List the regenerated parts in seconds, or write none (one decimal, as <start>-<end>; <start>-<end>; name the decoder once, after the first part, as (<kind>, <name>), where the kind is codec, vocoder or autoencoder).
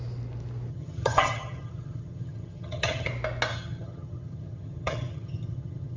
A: 0.7-3.1 (vocoder, HiFi-GAN); 3.5-6.0